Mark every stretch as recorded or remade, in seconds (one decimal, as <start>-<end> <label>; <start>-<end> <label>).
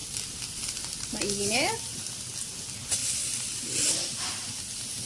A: 0.0-5.1 remade